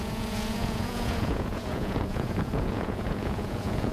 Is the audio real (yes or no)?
no